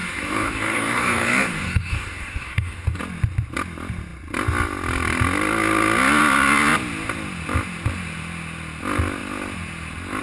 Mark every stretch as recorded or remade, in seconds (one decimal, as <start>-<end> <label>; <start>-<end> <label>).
0.0-3.0 remade; 3.0-10.2 recorded